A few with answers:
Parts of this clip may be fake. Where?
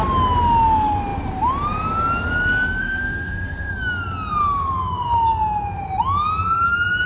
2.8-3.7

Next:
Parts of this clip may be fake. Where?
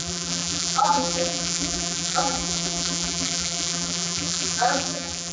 0.0-5.3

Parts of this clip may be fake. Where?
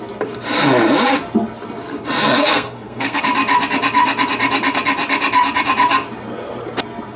2.4-3.2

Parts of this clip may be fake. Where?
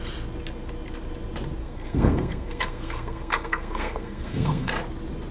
1.6-4.7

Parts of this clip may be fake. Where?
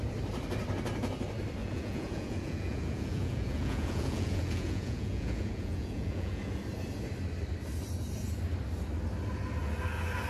1.6-6.6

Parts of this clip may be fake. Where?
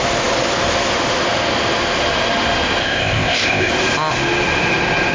2.8-3.7